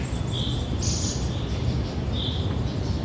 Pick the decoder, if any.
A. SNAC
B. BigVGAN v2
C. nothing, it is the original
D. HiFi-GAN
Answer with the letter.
C